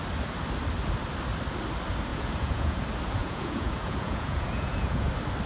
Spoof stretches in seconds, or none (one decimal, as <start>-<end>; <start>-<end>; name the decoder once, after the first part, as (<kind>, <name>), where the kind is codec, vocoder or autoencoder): 2.1-2.8 (vocoder, Vocos); 3.2-5.1